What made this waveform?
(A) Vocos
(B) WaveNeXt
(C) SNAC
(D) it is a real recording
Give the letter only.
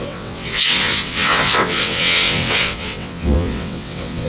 B